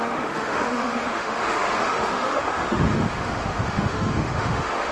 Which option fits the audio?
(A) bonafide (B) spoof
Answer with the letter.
B